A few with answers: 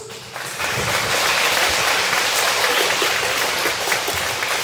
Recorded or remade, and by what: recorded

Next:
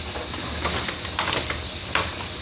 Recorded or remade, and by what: recorded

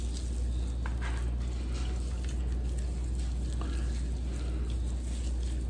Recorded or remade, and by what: recorded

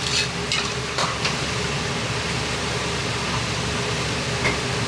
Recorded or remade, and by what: recorded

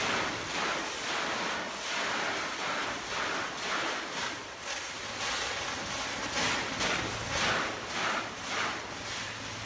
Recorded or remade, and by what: recorded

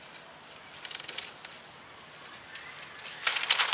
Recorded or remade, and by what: recorded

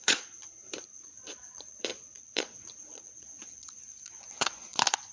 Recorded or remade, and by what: remade, vocoder, Vocos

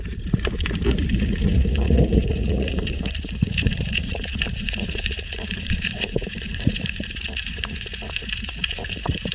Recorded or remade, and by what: remade, vocoder, Vocos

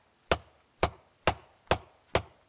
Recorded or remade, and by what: recorded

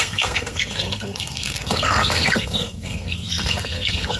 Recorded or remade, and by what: remade, codec, SNAC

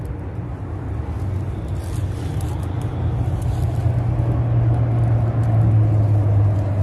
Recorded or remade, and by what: recorded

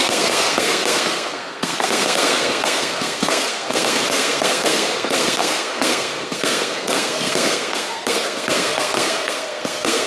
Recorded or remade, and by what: remade, codec, SNAC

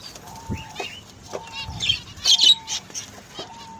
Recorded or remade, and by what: recorded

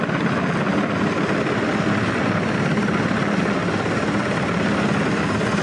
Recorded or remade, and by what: recorded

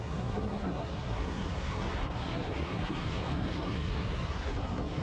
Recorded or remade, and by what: remade, codec, SNAC